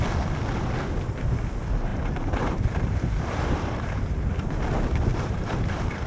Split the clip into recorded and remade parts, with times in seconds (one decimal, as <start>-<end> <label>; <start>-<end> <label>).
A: 0.0-1.9 recorded; 1.9-4.3 remade; 4.3-5.1 recorded; 5.1-6.1 remade